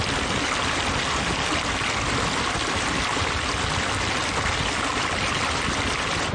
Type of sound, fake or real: real